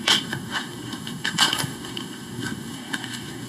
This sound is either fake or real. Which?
fake